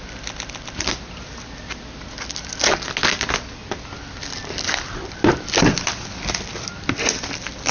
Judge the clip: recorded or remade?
recorded